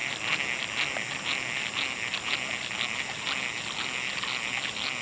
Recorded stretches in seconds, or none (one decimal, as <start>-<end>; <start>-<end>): 0.0-5.0